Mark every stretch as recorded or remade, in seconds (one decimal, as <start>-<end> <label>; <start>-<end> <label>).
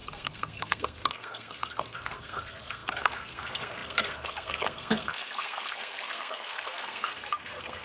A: 0.0-7.8 remade